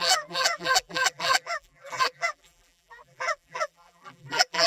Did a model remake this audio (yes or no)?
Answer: yes